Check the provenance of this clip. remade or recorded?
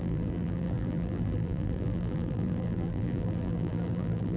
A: remade